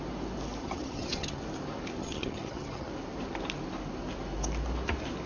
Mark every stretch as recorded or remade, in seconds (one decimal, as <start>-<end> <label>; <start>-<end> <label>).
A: 0.0-0.6 recorded; 0.6-1.4 remade; 1.4-2.0 recorded; 2.0-2.9 remade; 2.9-5.3 recorded